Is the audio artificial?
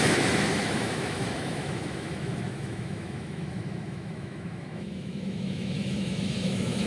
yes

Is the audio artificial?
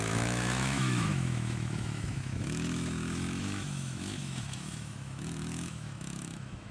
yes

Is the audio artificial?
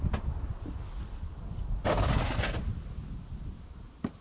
no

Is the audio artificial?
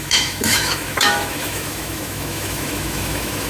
yes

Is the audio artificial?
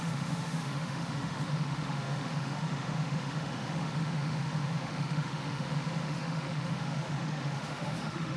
yes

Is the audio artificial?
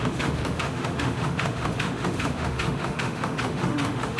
yes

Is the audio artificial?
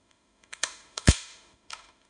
yes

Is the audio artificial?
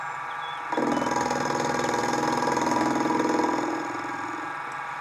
no